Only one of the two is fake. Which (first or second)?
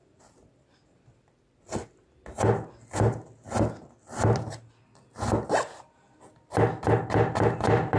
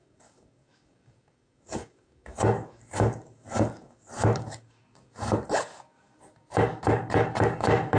second